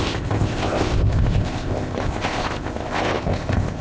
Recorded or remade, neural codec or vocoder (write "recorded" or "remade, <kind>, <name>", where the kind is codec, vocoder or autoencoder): remade, codec, ZipCodec